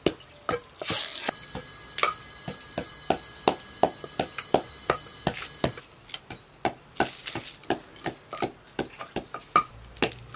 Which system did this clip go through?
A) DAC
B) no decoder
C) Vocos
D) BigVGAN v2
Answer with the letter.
B